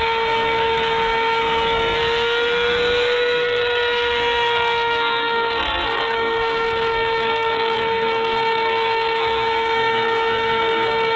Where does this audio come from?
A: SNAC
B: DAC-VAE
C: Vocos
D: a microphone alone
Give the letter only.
A